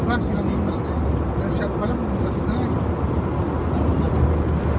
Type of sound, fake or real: real